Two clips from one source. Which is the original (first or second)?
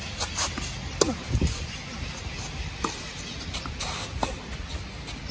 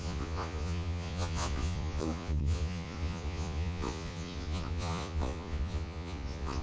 first